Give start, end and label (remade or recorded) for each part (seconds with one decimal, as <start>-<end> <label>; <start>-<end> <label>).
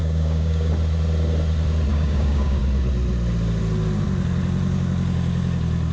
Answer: 0.0-0.7 remade; 0.7-1.9 recorded; 1.9-2.6 remade; 2.6-5.9 recorded